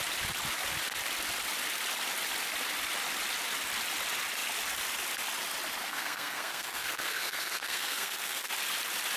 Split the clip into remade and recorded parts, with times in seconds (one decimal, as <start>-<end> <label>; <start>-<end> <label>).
0.0-5.9 recorded; 5.9-8.5 remade; 8.5-9.2 recorded